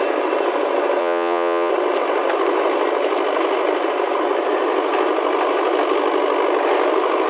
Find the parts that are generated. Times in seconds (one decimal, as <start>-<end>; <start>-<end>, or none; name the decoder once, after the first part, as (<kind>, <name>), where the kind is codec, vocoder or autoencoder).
1.0-1.7 (vocoder, Vocos)